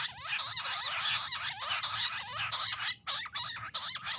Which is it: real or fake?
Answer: real